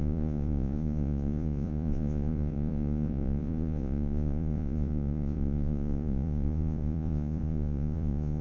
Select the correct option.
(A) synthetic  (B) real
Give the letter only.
A